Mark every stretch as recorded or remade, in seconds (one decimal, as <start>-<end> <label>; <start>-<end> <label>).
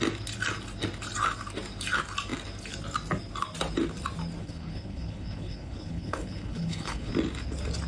0.0-4.4 recorded; 4.4-7.1 remade; 7.1-7.9 recorded